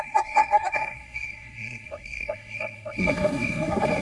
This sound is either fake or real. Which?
fake